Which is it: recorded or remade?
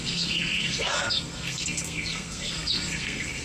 remade